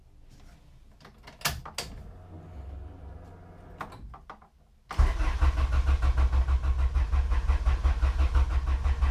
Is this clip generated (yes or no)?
no